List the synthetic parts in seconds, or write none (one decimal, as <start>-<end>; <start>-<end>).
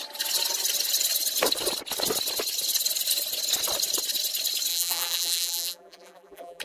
4.7-6.6